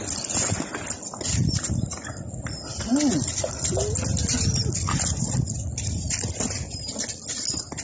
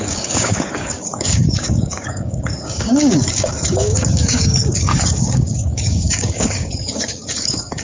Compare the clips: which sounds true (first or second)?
first